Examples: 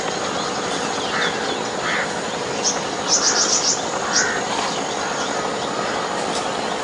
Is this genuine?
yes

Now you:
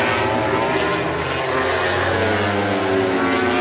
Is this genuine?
yes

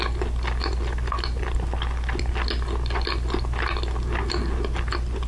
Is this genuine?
yes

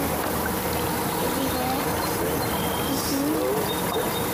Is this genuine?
yes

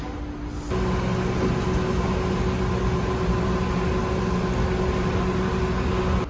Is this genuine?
yes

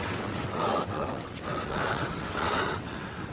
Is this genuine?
no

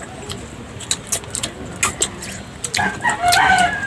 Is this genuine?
yes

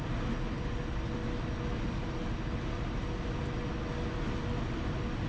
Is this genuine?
yes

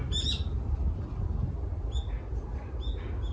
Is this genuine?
yes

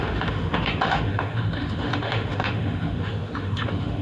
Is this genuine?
no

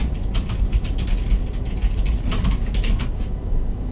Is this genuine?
yes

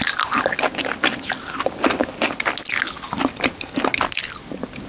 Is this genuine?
yes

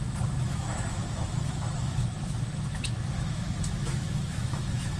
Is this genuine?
no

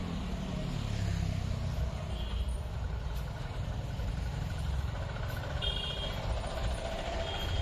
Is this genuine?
yes